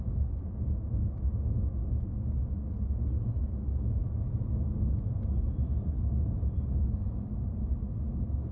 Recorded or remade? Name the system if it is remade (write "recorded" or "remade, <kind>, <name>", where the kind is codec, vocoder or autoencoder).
recorded